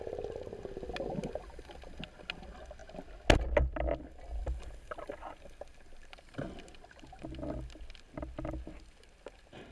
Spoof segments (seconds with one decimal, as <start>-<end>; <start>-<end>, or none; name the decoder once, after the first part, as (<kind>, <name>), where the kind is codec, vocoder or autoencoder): none